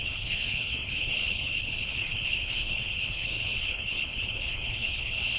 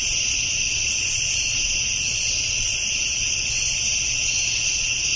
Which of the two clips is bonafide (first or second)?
second